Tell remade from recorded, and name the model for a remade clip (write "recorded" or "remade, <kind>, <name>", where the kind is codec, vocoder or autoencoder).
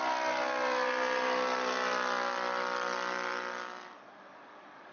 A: recorded